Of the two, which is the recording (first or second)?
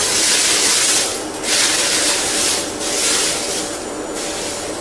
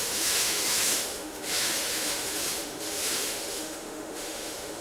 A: first